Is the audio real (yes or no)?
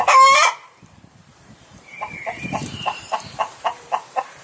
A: no